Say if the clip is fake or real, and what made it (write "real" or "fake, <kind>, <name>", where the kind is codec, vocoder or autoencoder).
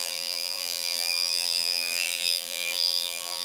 fake, vocoder, BigVGAN v2